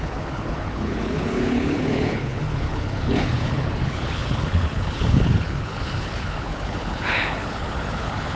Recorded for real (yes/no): no